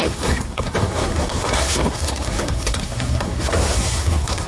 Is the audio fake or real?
fake